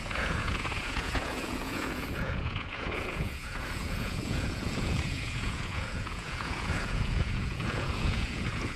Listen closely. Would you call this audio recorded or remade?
remade